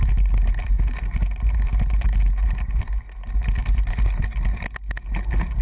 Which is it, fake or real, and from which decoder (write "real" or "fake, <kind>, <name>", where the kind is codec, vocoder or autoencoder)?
real